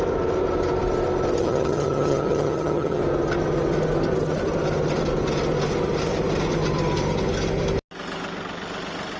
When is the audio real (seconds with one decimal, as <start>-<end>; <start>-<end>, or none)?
0.0-1.4; 3.0-9.2